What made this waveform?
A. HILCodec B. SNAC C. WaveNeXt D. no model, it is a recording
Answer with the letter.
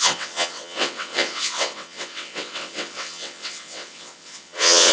C